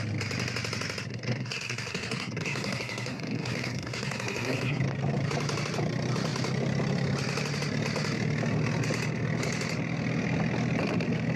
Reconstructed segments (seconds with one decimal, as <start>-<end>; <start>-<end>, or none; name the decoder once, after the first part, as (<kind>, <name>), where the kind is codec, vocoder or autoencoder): 1.1-4.8 (codec, SNAC)